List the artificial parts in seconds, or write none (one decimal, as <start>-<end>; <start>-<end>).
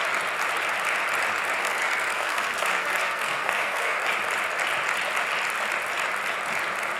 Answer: 1.6-4.1